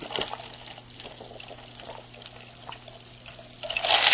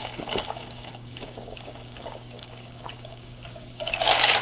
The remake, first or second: second